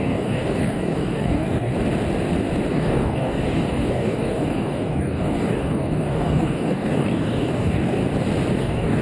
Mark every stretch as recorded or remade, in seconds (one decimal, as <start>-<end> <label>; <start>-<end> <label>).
0.0-1.7 remade; 1.7-2.7 recorded; 2.7-8.0 remade; 8.0-8.6 recorded; 8.6-9.0 remade